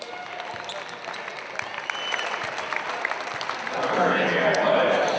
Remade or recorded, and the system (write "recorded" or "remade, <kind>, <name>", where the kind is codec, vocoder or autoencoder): recorded